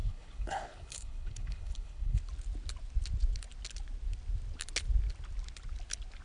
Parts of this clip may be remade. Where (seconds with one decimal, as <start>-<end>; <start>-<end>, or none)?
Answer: 0.0-2.2